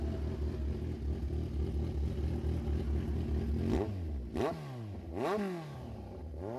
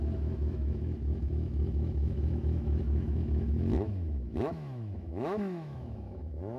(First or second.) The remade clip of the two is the second